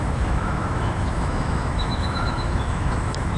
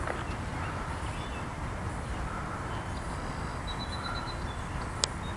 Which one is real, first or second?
second